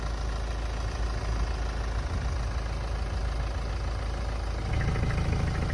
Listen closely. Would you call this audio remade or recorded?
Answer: recorded